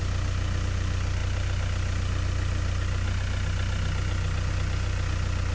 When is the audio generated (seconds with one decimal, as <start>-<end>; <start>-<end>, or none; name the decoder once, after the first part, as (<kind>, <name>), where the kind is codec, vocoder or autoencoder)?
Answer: none